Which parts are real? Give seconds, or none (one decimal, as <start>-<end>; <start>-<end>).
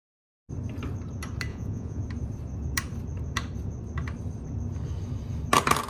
0.0-1.5; 2.0-5.9